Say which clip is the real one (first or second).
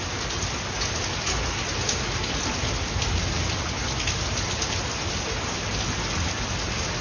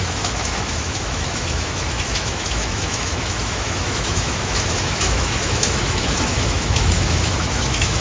first